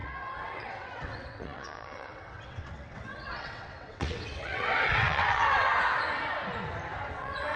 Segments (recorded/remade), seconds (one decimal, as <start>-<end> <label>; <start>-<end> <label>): 0.0-5.7 remade; 5.7-7.1 recorded; 7.1-7.6 remade